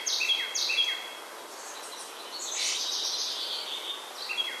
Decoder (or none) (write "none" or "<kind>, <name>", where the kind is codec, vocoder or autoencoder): none